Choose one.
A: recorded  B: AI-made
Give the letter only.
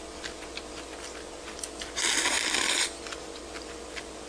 A